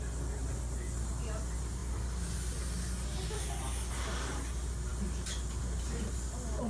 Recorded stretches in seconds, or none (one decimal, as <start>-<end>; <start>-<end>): 0.0-6.7